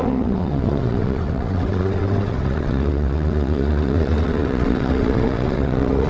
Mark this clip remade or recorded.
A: remade